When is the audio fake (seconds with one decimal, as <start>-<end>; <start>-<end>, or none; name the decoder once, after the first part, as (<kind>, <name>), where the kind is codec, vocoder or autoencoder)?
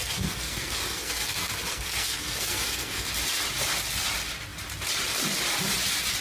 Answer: 0.0-3.1 (codec, SNAC)